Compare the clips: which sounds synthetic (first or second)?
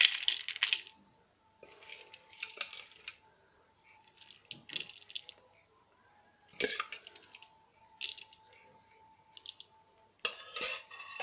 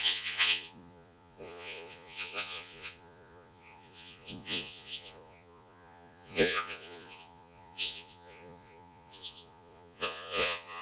second